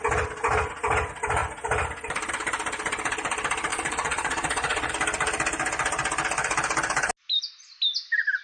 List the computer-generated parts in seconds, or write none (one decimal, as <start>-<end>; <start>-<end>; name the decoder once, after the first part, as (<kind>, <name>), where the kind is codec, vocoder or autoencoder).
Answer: 3.7-4.9 (vocoder, Vocos)